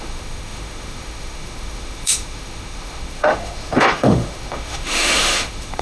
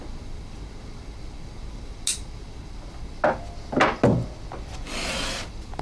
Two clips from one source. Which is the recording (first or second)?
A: second